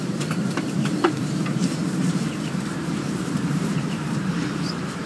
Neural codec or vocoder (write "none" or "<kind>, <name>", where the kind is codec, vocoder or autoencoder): vocoder, BigVGAN v2